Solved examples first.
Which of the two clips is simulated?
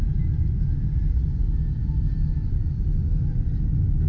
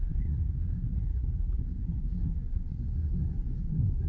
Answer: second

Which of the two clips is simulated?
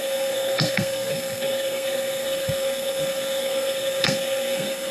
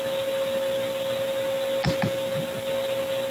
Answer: first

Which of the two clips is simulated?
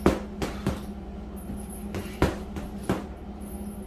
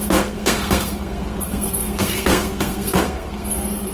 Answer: second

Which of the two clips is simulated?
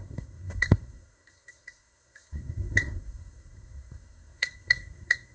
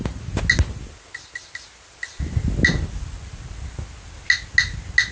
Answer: first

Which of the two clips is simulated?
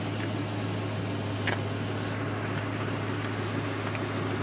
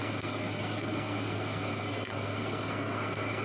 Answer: second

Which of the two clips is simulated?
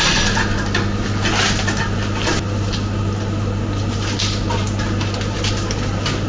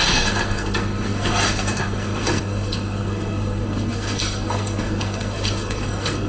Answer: second